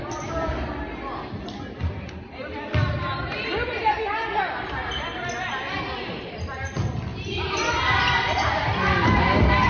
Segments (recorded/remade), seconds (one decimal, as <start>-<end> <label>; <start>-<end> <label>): 0.0-9.7 recorded